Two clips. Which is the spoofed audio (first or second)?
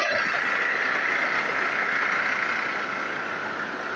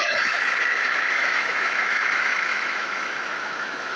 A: second